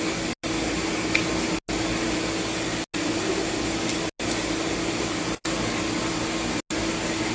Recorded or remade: recorded